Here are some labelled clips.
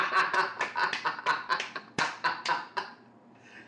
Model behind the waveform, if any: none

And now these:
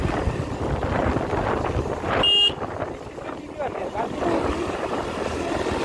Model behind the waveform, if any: none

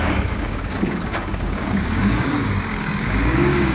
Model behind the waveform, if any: codec, DAC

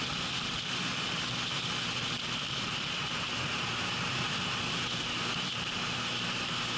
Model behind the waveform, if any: none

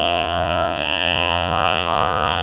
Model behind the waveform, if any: vocoder, Vocos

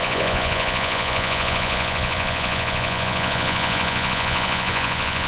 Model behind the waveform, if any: vocoder, Vocos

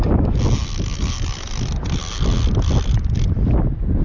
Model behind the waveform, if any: none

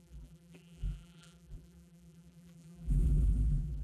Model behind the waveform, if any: vocoder, BigVGAN v2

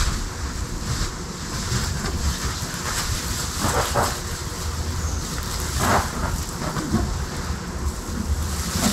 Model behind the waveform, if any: none